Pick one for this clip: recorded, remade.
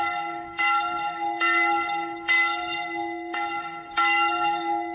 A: remade